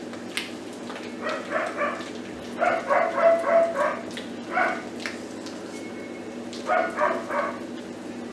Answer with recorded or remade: recorded